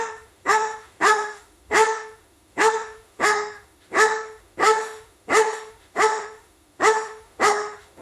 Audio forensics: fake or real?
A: fake